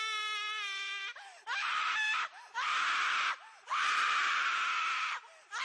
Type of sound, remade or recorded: recorded